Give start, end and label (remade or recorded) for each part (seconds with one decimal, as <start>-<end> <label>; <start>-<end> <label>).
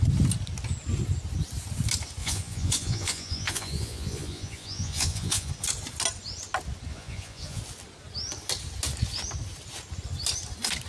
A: 0.0-2.2 recorded; 2.2-5.5 remade; 5.5-6.9 recorded; 6.9-7.6 remade; 7.6-10.9 recorded